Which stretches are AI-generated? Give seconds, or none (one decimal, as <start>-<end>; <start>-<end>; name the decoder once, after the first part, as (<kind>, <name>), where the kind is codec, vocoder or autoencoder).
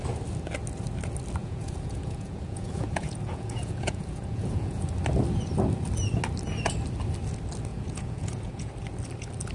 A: 1.4-4.9 (vocoder, Vocos); 7.7-8.7